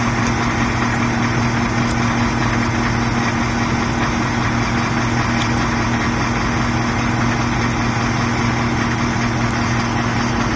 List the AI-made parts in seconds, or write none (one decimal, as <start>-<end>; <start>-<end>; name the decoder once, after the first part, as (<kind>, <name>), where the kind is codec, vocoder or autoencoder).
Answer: none

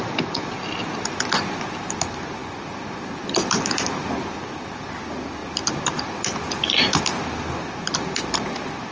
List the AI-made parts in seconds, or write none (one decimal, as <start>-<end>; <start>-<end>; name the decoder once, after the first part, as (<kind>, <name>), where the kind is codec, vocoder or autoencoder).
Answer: none

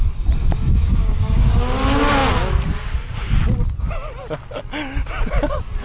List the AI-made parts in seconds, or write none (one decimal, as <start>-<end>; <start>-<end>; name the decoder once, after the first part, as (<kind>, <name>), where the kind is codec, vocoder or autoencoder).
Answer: 0.8-1.5 (codec, DAC)

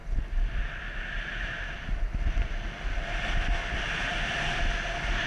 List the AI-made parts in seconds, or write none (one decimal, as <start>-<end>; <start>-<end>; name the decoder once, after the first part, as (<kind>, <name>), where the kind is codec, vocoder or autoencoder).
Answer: none

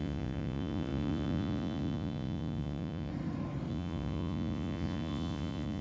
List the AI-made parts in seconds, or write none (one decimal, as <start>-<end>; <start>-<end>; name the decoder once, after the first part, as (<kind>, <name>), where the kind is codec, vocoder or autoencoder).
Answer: 0.0-3.1 (vocoder, Vocos); 3.7-5.8

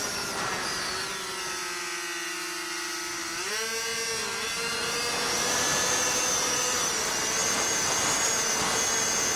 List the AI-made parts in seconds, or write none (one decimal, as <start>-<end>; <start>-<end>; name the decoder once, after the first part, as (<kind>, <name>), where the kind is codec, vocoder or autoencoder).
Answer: none

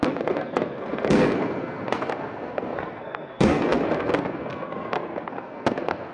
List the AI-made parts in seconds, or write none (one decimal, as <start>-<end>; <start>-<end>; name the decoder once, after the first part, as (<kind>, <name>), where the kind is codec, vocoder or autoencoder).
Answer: 0.0-6.1 (codec, SNAC)